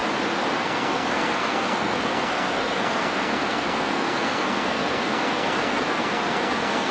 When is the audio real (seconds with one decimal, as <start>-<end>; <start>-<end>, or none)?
0.0-0.6